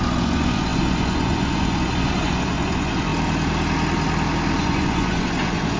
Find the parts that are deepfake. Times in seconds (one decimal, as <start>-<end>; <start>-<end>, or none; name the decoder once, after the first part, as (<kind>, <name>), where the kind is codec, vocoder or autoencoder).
0.0-3.1 (vocoder, Vocos); 4.6-5.8